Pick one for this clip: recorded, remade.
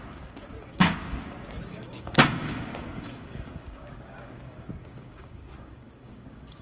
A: remade